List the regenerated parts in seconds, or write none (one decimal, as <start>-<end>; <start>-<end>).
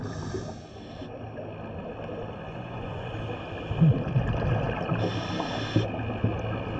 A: 2.5-3.1